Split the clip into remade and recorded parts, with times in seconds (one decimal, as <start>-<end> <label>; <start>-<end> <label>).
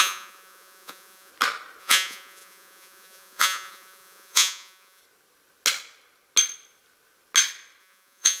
0.0-1.3 remade; 1.3-1.8 recorded; 1.8-5.0 remade; 5.0-7.8 recorded; 7.8-8.4 remade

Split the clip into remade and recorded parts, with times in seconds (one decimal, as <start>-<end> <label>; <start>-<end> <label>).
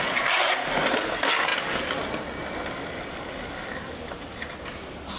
0.0-5.2 recorded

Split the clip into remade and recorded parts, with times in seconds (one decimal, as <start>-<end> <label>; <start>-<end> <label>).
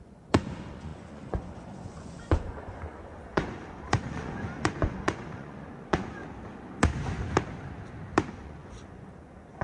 0.0-6.2 remade; 6.2-8.3 recorded; 8.3-9.6 remade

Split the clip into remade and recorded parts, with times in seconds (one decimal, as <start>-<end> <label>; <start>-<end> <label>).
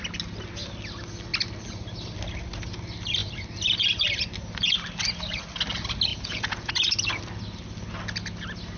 0.0-6.1 recorded; 6.1-6.7 remade; 6.7-8.8 recorded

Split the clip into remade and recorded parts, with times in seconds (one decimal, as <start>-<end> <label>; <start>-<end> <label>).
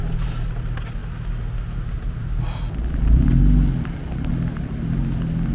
0.0-5.5 recorded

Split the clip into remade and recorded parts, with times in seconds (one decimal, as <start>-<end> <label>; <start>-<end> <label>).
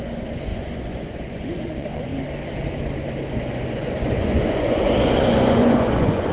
0.0-2.1 remade; 2.1-3.3 recorded; 3.3-6.3 remade